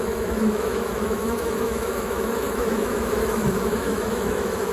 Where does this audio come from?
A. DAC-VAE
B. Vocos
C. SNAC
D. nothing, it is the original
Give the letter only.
A